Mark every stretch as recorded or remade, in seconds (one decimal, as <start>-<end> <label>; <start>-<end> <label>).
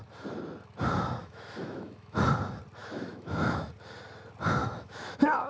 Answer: 0.0-1.2 recorded; 1.2-2.2 remade; 2.2-2.8 recorded; 2.8-3.7 remade; 3.7-4.6 recorded; 4.6-5.5 remade